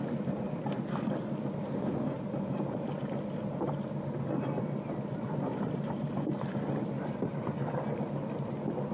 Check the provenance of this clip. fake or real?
real